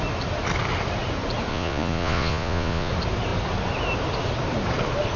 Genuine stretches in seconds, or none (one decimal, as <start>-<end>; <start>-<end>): 0.0-1.5; 2.9-5.2